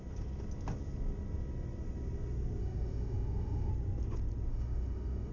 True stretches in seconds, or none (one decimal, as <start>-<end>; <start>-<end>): 0.0-2.6; 3.7-4.5